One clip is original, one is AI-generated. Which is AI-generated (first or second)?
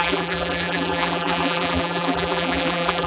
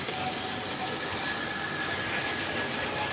first